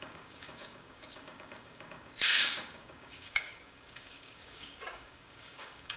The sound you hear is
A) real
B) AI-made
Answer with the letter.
B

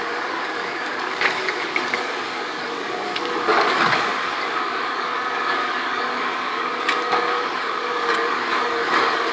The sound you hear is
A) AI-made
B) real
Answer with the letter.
A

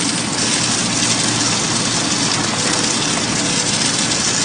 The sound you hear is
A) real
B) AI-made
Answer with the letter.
A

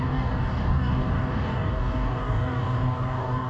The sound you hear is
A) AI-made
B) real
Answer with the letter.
A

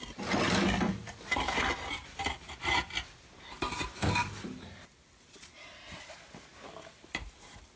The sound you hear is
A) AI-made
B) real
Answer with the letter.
B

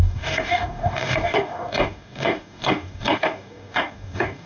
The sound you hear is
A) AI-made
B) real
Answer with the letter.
A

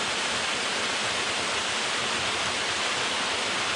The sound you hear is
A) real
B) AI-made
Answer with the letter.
A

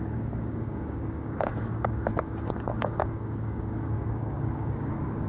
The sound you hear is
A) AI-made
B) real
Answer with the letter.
A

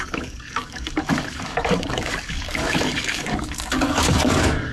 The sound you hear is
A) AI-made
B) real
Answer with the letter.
A